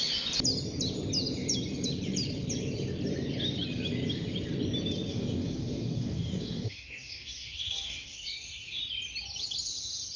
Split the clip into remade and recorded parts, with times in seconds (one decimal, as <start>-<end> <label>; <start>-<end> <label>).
0.0-5.1 recorded; 5.1-8.8 remade; 8.8-10.2 recorded

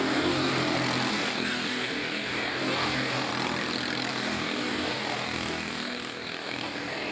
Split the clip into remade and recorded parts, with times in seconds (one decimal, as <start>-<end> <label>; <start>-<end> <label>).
0.0-0.5 remade; 0.5-1.1 recorded; 1.1-3.3 remade; 3.3-4.1 recorded; 4.1-7.1 remade

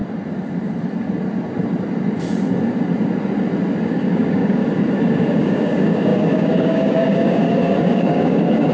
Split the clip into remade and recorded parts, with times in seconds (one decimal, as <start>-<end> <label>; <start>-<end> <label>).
0.0-3.8 recorded; 3.8-4.6 remade; 4.6-5.4 recorded; 5.4-8.7 remade

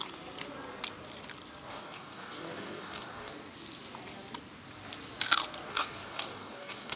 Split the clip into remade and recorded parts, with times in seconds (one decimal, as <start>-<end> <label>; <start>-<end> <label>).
0.0-1.7 recorded; 1.7-3.3 remade; 3.3-5.7 recorded; 5.7-7.0 remade

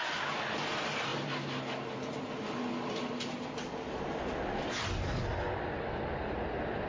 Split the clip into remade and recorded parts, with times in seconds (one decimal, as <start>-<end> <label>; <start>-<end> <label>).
0.0-6.9 recorded

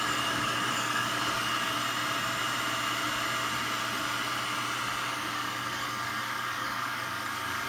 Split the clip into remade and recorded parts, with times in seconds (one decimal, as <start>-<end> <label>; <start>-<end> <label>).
0.0-1.8 remade; 1.8-5.0 recorded; 5.0-7.7 remade